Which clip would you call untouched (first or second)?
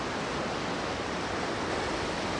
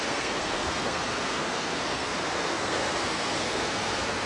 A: first